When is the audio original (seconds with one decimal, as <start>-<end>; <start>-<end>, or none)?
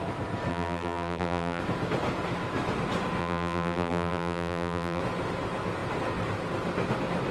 0.0-0.5; 1.6-3.2; 5.0-7.3